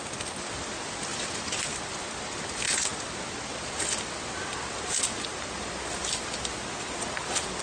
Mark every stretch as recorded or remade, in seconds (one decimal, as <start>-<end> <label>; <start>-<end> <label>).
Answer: 0.0-7.6 recorded